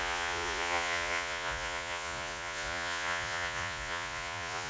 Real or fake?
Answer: fake